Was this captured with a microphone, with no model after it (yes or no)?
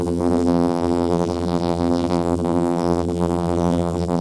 no